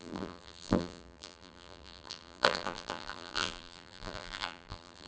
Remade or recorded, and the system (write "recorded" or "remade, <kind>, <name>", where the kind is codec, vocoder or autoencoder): remade, vocoder, BigVGAN v2